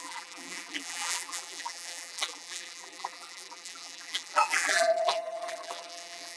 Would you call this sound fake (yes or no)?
yes